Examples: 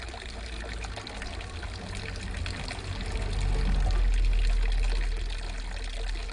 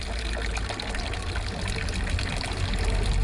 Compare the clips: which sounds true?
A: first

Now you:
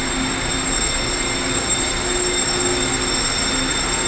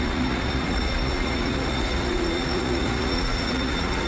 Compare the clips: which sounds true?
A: first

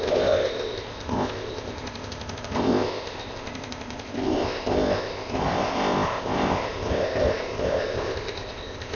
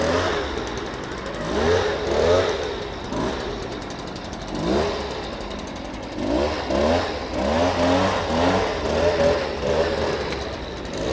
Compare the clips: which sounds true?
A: second